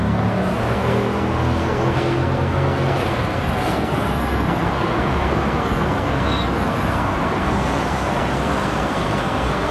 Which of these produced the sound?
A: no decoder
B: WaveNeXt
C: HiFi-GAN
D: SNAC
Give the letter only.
D